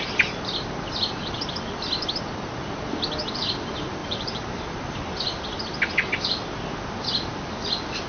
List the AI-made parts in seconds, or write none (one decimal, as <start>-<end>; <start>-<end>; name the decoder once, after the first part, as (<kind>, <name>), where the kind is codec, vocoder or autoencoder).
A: 4.0-4.6 (vocoder, BigVGAN v2)